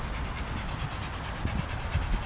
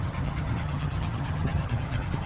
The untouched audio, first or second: first